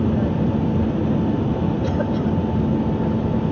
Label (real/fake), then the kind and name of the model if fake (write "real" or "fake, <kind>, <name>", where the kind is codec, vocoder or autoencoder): real